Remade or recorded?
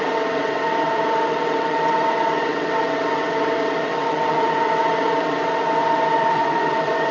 remade